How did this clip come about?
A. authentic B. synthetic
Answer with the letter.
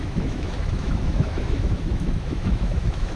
B